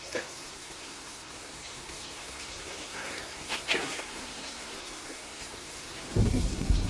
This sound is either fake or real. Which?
fake